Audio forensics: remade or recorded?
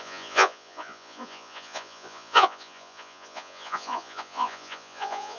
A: remade